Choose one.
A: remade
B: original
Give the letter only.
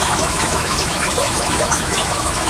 A